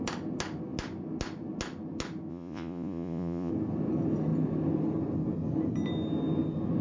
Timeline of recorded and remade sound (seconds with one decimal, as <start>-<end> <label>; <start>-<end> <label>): 0.0-2.3 recorded; 2.3-3.5 remade; 3.5-6.8 recorded